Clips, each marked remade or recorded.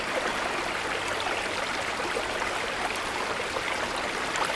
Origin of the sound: recorded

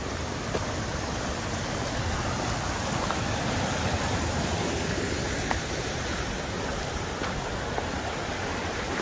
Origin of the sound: recorded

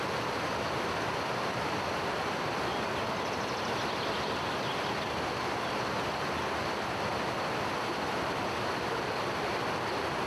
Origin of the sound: recorded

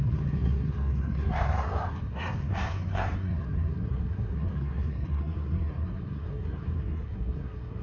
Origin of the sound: remade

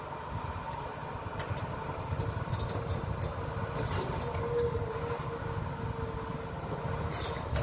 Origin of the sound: recorded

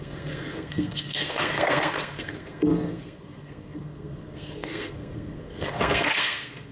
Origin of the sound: remade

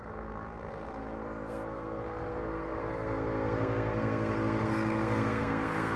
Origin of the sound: remade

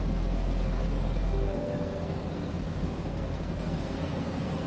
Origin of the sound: remade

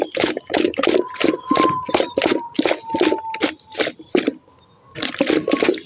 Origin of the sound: recorded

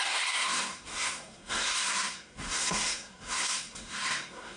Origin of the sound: remade